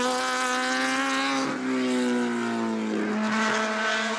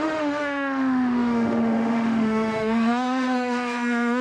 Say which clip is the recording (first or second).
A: first